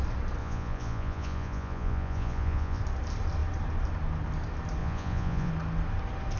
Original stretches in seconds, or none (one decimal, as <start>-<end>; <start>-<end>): 0.0-0.4; 2.8-4.8; 5.5-6.4